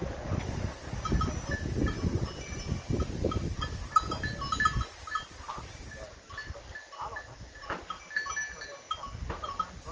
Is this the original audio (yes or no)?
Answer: yes